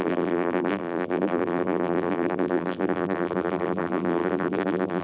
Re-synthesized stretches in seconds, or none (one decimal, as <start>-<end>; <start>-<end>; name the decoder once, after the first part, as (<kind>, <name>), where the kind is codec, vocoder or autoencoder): 0.0-5.0 (vocoder, BigVGAN v2)